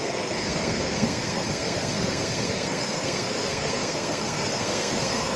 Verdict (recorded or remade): remade